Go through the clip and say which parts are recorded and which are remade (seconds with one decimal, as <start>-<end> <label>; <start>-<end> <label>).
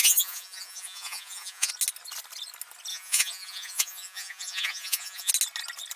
0.0-1.7 remade; 1.7-2.9 recorded; 2.9-5.3 remade; 5.3-6.0 recorded